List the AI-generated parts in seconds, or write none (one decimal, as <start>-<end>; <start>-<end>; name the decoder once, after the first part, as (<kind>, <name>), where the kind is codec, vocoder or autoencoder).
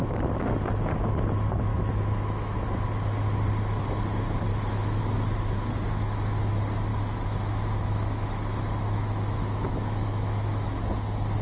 1.7-2.6 (autoencoder, DAC-VAE); 4.5-5.0; 6.9-10.8